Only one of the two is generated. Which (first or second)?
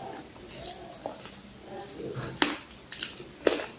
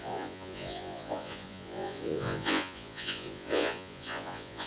second